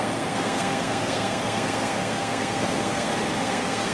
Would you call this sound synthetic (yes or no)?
yes